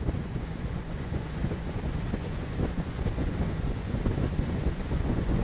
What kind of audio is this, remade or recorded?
remade